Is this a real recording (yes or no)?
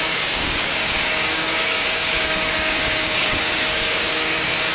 no